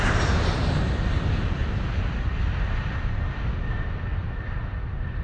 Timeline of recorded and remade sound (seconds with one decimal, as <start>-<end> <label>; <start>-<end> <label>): 0.0-5.2 recorded